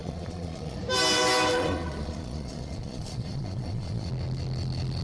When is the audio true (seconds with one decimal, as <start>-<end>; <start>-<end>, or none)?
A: 0.8-1.5; 4.1-5.0